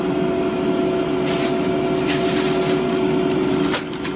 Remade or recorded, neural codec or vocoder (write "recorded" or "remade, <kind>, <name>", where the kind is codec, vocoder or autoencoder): recorded